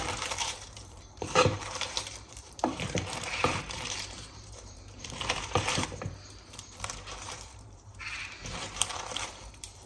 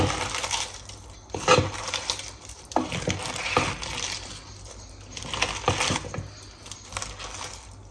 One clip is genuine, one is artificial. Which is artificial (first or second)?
first